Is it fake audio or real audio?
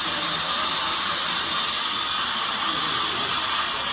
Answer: real